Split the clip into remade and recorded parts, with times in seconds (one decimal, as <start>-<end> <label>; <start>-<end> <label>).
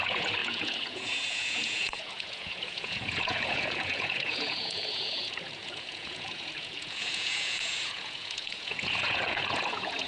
0.0-10.1 remade